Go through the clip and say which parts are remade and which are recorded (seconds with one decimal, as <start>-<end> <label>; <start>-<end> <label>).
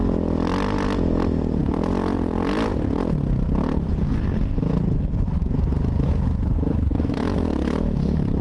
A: 0.0-5.3 recorded; 5.3-8.4 remade